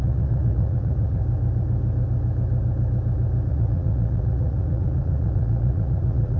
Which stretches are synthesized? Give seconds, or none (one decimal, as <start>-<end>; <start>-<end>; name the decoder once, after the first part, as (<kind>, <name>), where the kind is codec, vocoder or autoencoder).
0.0-1.2 (vocoder, Vocos); 3.5-6.4